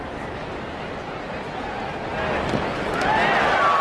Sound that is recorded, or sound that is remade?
recorded